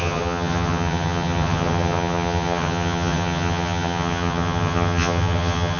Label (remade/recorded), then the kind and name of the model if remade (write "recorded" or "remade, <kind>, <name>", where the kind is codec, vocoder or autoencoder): remade, vocoder, HiFi-GAN